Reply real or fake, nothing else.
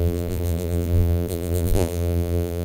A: fake